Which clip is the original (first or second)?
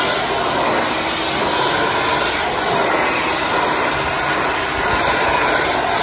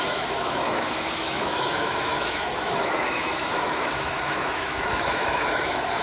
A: first